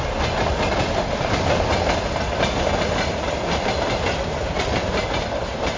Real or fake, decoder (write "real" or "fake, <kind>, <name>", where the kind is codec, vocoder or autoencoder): real